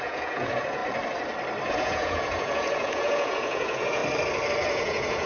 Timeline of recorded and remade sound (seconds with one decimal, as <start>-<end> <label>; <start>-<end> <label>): 0.0-0.8 remade; 0.8-1.7 recorded; 1.7-4.0 remade; 4.0-4.7 recorded; 4.7-5.3 remade